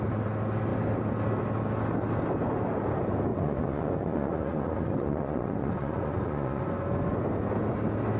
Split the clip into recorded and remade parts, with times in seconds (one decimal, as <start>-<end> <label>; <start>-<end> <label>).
0.0-3.3 recorded; 3.3-6.6 remade; 6.6-8.2 recorded